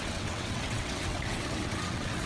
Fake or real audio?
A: fake